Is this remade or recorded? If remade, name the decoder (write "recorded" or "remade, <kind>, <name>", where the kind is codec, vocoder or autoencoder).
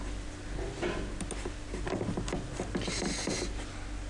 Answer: recorded